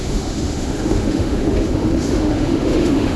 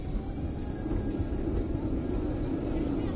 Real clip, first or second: second